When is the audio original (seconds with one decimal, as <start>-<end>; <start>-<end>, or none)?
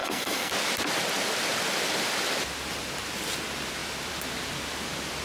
0.5-5.2